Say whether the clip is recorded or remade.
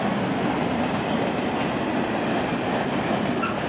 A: recorded